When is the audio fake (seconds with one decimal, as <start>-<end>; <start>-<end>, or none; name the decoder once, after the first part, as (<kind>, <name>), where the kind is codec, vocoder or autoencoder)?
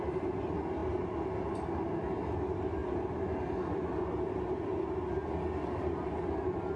none